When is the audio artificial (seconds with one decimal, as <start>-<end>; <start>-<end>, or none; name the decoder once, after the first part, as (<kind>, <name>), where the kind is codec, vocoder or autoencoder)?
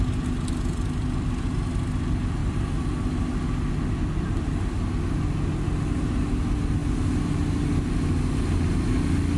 none